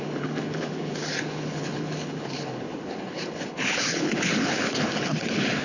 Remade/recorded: remade